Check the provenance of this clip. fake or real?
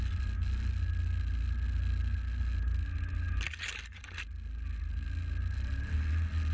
real